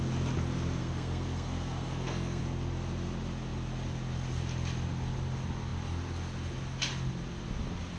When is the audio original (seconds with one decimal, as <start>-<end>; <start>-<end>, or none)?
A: 0.0-0.8; 2.4-8.0